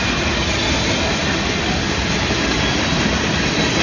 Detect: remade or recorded recorded